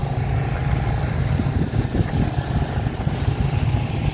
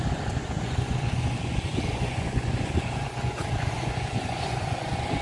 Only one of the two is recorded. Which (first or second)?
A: first